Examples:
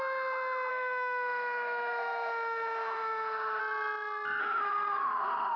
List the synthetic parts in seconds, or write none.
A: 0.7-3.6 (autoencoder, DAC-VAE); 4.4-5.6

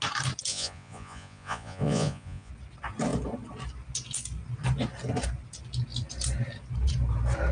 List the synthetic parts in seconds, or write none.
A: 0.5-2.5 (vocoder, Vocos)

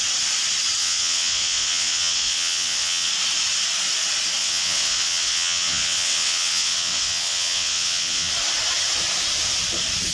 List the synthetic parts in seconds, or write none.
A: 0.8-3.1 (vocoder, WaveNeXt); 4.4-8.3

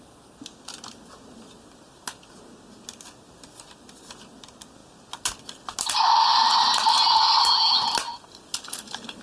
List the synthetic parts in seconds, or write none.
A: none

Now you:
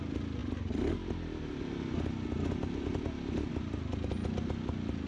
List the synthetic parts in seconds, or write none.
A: none

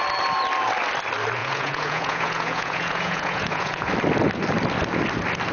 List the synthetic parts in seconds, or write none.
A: 1.4-3.9 (vocoder, Vocos)